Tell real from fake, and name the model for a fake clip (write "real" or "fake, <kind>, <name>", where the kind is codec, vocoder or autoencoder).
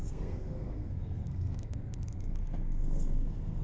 fake, codec, SNAC